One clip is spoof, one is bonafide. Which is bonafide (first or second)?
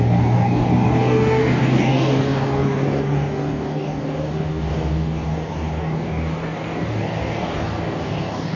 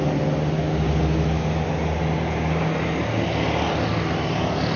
second